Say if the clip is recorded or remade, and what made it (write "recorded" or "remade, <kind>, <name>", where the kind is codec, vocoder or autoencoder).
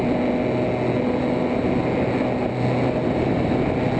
recorded